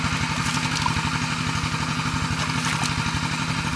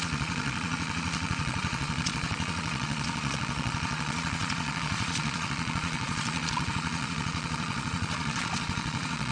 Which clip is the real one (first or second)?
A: first